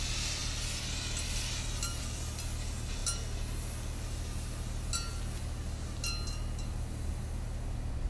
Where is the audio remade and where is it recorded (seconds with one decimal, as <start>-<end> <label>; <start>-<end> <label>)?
0.0-8.1 recorded